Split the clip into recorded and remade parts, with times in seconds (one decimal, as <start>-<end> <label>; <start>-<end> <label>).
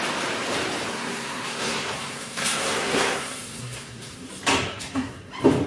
0.0-0.9 recorded; 0.9-4.3 remade; 4.3-4.7 recorded; 4.7-5.3 remade; 5.3-5.7 recorded